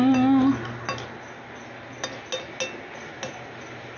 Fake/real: real